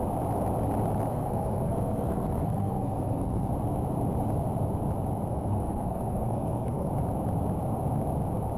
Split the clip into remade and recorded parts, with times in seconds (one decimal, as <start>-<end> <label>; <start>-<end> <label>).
0.0-1.1 recorded; 1.1-3.5 remade; 3.5-5.3 recorded; 5.3-6.9 remade; 6.9-8.6 recorded